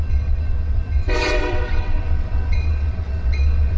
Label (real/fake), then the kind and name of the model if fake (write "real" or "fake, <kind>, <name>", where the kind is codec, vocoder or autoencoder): fake, vocoder, WaveNeXt